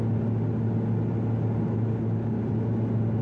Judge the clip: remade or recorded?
recorded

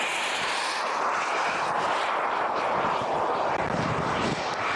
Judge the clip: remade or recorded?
recorded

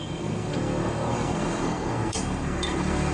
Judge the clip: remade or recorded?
remade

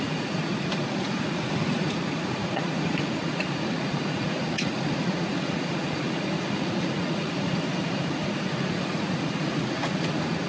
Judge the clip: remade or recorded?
remade